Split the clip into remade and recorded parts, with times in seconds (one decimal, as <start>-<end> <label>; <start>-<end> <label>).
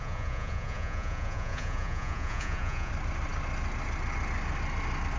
0.0-2.9 remade; 2.9-5.2 recorded